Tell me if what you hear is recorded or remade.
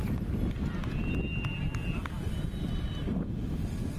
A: recorded